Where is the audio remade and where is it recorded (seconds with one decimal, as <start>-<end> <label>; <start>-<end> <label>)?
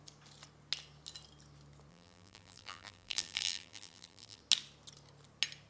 0.0-1.9 recorded; 1.9-4.4 remade; 4.4-5.7 recorded